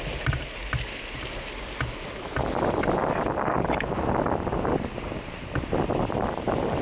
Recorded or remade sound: recorded